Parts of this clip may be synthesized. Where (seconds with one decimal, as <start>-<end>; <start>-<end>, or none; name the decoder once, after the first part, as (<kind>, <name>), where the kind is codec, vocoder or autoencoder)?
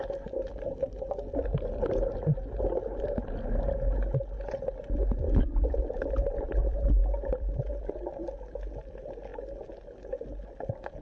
none